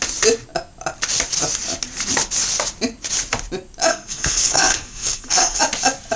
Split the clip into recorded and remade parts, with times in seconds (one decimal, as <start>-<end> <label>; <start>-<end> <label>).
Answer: 0.0-3.9 recorded; 3.9-5.6 remade; 5.6-6.2 recorded